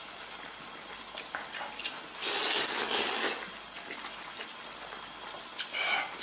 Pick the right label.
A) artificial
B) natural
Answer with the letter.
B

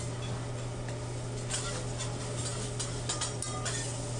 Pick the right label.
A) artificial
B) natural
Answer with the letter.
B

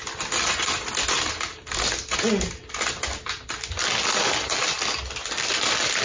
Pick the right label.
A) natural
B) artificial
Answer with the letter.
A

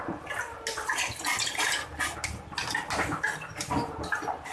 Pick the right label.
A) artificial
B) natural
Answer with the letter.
B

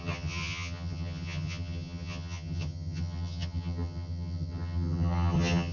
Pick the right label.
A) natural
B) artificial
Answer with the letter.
B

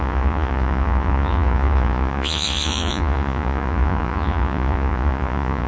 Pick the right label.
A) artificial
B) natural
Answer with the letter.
A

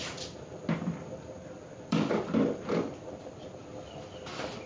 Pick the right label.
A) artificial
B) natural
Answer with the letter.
A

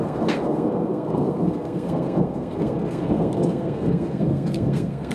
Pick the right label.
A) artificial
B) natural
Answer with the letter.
A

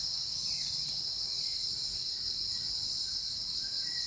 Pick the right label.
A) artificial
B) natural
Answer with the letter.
A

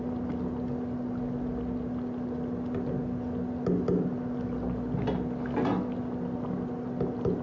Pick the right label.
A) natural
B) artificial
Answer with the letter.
A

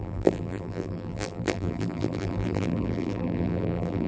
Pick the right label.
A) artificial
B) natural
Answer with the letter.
A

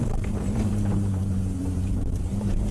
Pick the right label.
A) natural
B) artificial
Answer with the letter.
B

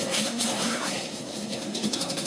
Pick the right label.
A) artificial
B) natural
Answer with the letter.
A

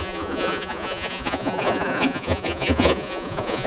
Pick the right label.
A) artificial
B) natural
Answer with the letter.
A